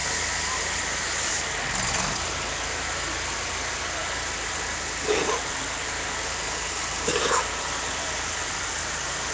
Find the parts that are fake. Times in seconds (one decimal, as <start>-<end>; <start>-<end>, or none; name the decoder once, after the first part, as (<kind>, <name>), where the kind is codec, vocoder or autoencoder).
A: none